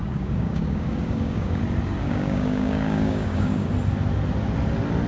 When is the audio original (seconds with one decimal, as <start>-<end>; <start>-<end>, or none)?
1.6-2.0; 3.7-5.1